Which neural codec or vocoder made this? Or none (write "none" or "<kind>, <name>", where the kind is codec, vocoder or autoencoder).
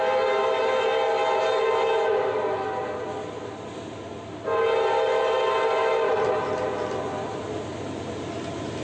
none